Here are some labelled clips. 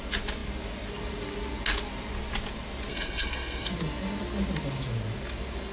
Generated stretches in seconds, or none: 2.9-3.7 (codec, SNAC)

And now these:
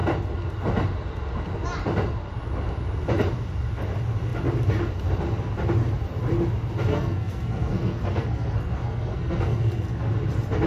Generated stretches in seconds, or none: 6.9-10.1 (codec, SNAC)